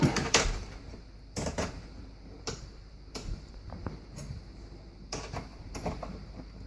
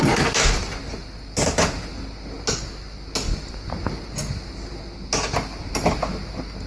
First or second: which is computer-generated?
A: first